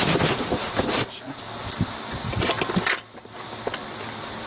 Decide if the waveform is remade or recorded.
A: recorded